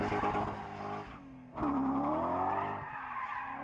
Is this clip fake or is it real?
real